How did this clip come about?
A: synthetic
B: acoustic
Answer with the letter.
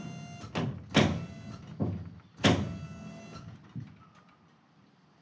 B